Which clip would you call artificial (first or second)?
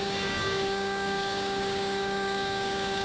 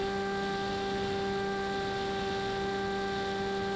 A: first